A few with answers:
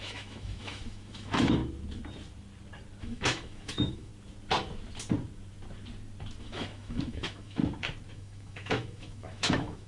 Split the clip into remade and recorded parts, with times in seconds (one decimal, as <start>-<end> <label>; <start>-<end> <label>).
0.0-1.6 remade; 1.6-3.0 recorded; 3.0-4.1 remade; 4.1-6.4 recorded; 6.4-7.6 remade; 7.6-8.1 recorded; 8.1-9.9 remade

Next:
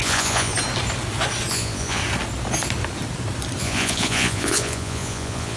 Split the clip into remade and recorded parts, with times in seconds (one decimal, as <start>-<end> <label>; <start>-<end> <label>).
0.0-0.5 remade; 0.5-1.5 recorded; 1.5-2.0 remade; 2.0-3.6 recorded; 3.6-5.6 remade

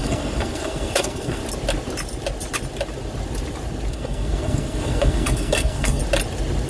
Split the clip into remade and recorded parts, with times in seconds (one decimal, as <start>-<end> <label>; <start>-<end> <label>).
0.0-1.4 remade; 1.4-3.9 recorded; 3.9-6.0 remade; 6.0-6.7 recorded